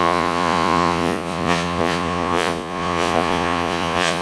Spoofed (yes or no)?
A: yes